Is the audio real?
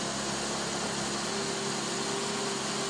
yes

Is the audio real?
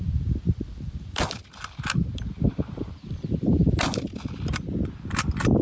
yes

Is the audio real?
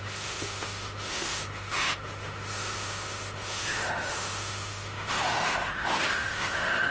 no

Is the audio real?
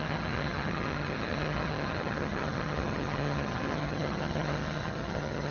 no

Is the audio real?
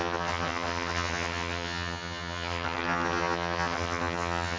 no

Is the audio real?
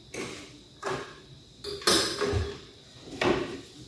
yes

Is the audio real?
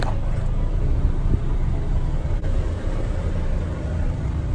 no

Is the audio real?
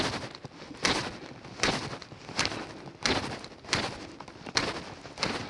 yes